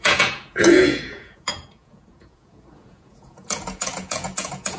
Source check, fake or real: fake